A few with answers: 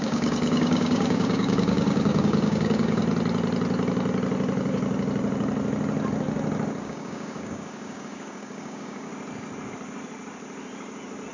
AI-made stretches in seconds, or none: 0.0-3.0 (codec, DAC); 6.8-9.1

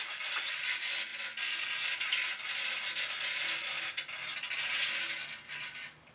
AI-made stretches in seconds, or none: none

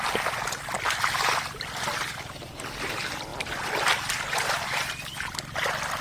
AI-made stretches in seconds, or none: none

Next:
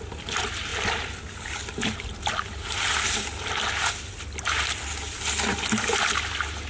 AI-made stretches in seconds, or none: none

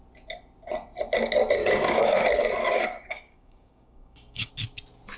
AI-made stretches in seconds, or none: 1.6-2.2 (codec, DAC); 2.6-4.5